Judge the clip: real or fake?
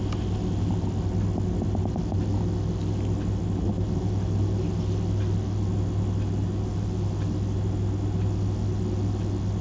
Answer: real